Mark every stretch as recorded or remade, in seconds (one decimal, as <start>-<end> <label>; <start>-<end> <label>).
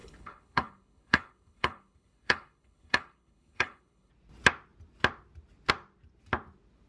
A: 0.0-4.1 remade; 4.1-6.9 recorded